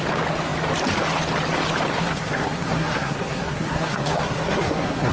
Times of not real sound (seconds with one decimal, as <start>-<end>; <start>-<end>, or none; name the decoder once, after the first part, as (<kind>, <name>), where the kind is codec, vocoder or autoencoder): 1.9-5.1 (codec, SNAC)